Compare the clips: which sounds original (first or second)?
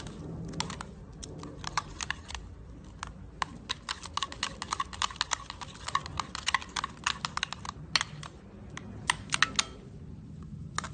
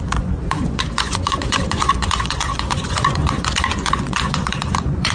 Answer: first